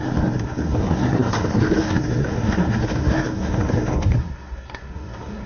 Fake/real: fake